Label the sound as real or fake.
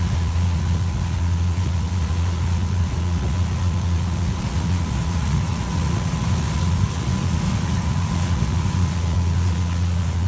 fake